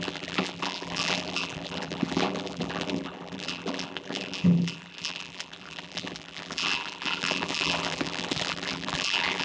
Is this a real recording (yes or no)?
no